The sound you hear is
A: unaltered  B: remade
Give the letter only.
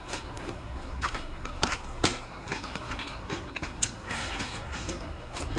B